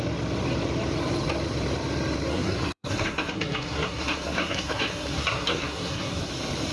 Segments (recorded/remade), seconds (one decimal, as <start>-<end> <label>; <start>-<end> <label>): 0.0-2.3 recorded; 2.3-6.3 remade; 6.3-6.7 recorded